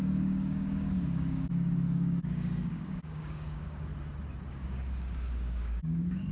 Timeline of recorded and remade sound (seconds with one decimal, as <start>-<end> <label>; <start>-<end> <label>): 0.0-3.9 remade; 3.9-4.5 recorded; 4.5-6.3 remade